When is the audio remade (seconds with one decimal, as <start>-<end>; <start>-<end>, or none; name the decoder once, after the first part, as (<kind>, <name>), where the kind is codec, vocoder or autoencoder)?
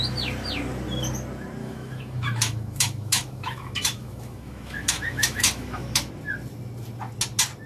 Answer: 1.6-6.1 (autoencoder, DAC-VAE)